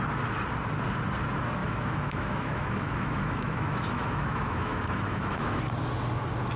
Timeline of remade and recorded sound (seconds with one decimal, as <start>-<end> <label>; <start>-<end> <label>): 0.0-1.6 recorded; 1.6-5.6 remade; 5.6-6.6 recorded